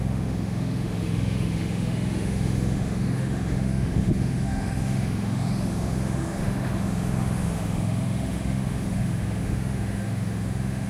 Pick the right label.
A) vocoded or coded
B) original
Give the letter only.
A